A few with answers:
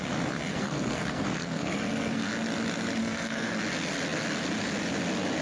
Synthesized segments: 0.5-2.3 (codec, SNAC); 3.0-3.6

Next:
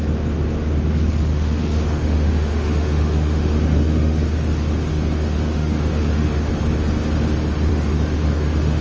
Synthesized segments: 1.3-4.2 (autoencoder, DAC-VAE); 4.9-6.5; 7.7-8.8

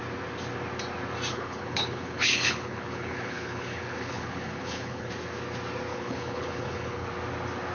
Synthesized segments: 1.3-5.1 (codec, HILCodec); 5.9-7.1